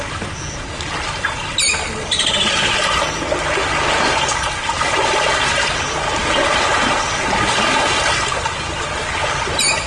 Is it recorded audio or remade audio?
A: recorded